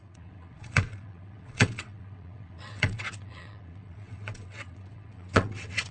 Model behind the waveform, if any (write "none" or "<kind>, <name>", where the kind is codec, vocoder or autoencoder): vocoder, WaveNeXt